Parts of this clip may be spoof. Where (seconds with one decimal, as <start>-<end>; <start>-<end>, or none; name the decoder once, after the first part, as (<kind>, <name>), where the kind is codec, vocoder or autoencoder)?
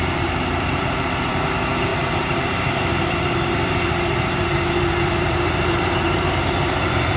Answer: 0.0-7.2 (vocoder, BigVGAN v2)